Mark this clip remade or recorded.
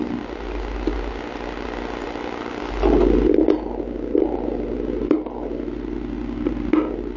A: recorded